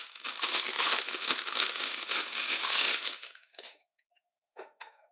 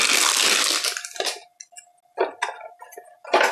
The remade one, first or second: first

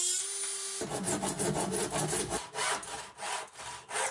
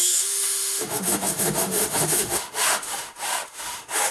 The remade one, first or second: second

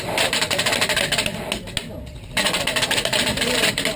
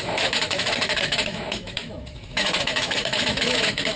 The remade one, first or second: second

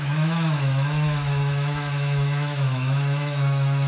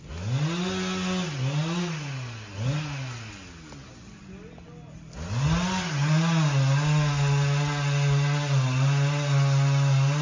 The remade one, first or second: first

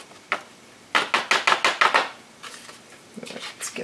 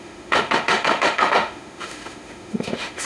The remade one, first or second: second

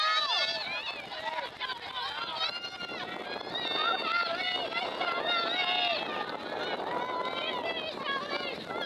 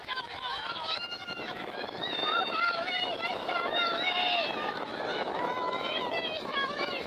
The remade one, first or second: second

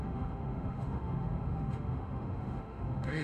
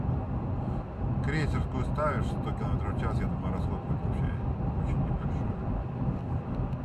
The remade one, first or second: first